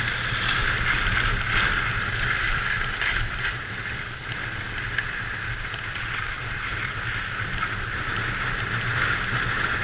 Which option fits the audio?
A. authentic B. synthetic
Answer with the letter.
A